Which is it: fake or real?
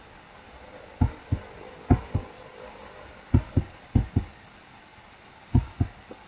real